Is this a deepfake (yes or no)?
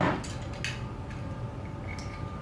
no